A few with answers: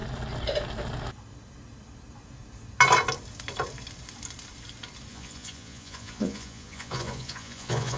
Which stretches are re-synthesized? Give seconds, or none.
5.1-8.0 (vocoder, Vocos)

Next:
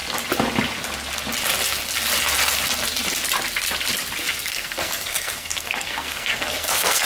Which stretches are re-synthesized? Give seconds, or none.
4.2-7.1 (codec, SNAC)

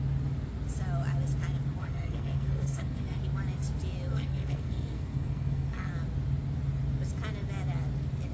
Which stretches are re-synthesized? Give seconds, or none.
1.8-3.2 (codec, SNAC); 4.1-5.9

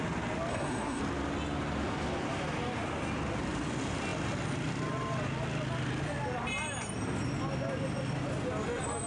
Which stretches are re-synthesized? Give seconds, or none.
0.5-1.0 (codec, SNAC)

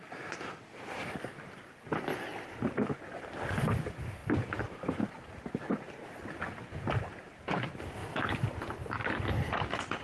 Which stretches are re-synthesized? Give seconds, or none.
4.2-7.0 (vocoder, BigVGAN v2); 8.0-9.1